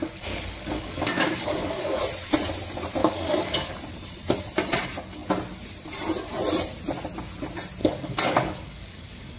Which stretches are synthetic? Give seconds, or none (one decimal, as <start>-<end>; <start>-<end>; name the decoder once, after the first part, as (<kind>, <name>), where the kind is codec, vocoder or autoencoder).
0.0-2.0 (codec, DAC); 3.0-3.7; 7.8-9.4